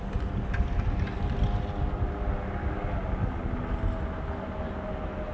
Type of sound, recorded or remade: recorded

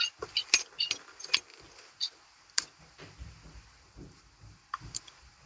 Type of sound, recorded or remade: recorded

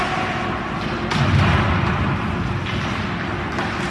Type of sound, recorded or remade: recorded